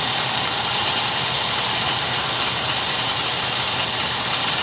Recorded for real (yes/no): no